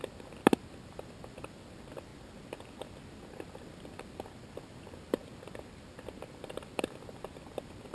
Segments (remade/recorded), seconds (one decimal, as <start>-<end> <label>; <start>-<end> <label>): 0.0-2.1 remade; 2.1-3.5 recorded; 3.5-5.2 remade; 5.2-6.3 recorded; 6.3-7.9 remade